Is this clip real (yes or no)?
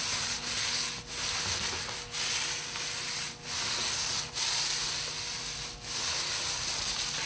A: yes